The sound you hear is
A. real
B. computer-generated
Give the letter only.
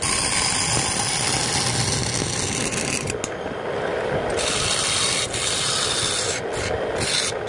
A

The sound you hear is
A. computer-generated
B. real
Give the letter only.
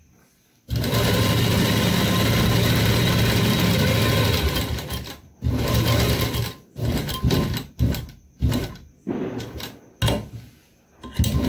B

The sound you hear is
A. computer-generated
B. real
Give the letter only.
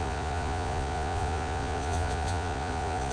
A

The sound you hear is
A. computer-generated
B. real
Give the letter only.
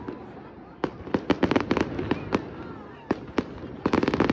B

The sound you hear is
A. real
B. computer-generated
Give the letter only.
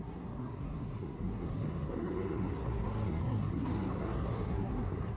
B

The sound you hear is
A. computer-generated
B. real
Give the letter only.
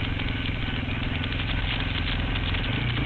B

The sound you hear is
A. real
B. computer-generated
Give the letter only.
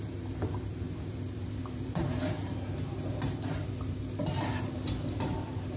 B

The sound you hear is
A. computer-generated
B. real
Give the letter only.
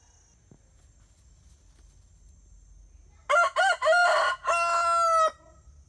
B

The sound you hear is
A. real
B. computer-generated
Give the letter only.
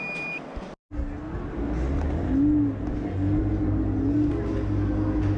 A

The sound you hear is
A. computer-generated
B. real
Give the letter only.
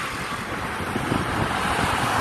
B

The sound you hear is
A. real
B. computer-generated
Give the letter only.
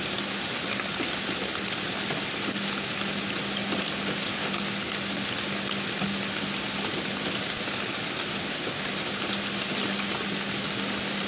A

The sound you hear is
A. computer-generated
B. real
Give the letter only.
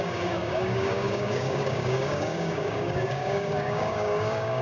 A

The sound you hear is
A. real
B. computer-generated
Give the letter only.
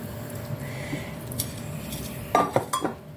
B